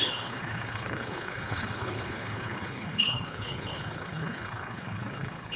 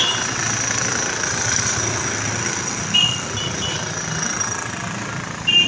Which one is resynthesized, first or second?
first